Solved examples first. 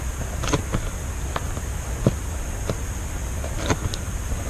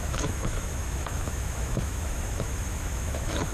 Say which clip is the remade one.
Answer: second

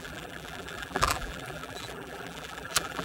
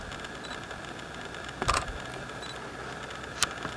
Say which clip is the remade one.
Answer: first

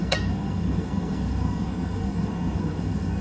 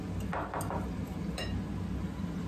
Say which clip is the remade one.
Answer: first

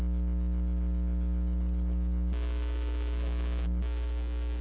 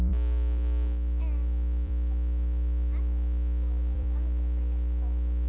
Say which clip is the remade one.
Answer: second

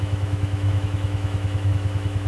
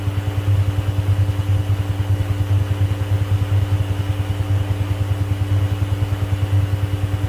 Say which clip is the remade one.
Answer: first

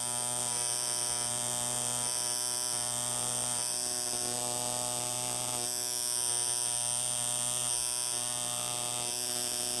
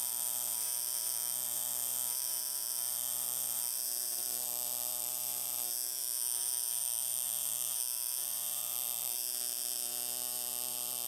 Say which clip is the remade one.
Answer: second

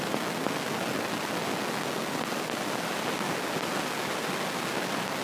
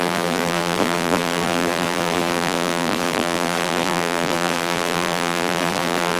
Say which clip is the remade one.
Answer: second